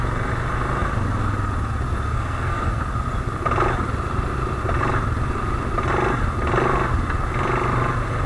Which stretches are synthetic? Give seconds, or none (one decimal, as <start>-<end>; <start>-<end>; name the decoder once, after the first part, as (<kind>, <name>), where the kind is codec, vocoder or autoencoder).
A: 2.1-2.8 (codec, SNAC)